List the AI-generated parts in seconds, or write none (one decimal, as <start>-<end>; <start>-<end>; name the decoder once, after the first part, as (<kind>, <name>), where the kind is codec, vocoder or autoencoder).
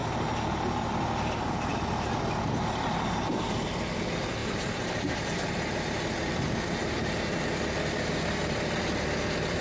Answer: 4.4-5.8 (vocoder, BigVGAN v2); 6.8-7.4